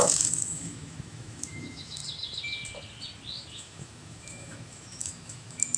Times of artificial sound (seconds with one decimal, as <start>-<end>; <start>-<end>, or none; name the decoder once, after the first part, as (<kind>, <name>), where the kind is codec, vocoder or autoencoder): 0.0-2.0 (autoencoder, DAC-VAE); 3.5-5.8